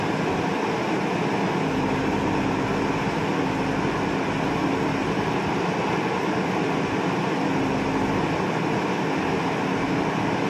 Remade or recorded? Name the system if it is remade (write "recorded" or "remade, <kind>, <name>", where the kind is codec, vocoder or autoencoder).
recorded